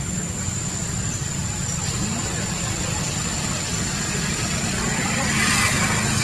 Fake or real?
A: real